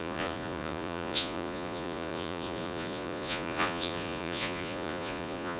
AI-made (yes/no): yes